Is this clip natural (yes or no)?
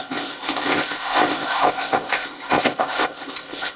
no